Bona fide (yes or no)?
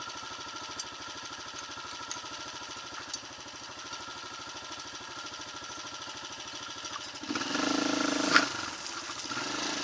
yes